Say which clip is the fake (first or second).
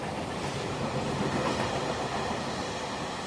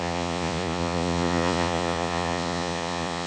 second